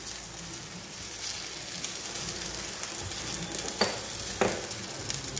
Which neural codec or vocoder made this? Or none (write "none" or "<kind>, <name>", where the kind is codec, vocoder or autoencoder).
none